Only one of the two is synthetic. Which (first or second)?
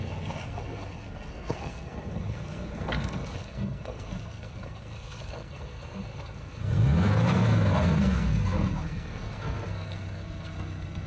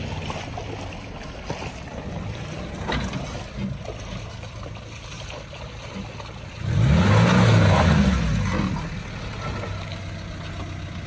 first